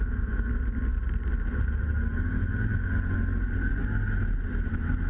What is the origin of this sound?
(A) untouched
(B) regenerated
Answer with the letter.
A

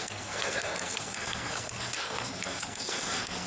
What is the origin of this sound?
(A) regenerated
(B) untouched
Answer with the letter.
A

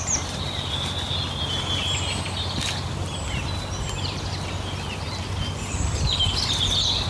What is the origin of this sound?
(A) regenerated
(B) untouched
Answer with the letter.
B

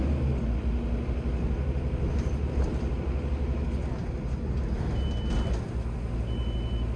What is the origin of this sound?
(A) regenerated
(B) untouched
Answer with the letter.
B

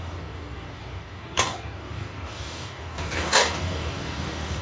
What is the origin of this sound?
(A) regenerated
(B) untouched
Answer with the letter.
A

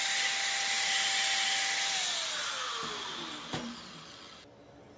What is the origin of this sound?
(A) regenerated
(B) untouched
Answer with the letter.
B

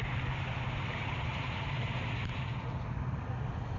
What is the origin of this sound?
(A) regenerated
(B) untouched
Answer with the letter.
B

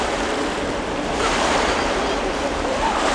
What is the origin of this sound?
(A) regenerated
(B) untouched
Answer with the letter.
A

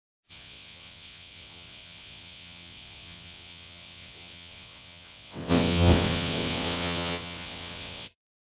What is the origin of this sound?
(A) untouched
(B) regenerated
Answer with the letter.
B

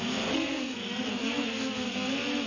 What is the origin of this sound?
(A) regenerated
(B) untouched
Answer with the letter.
A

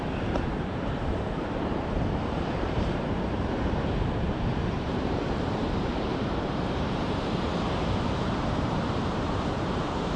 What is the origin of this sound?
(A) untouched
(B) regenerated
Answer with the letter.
B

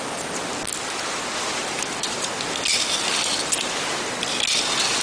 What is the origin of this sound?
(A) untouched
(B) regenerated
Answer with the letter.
A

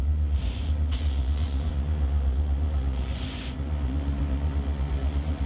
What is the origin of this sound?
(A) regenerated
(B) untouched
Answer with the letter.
A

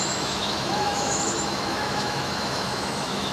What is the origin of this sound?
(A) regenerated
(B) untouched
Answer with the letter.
A